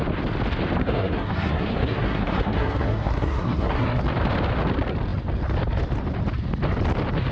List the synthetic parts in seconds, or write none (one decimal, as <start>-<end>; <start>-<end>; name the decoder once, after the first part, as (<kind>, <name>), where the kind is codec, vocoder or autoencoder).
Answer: 0.8-4.0 (codec, SNAC)